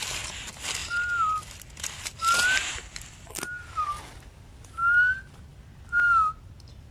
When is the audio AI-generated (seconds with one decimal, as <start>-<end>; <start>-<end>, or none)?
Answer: 5.5-6.0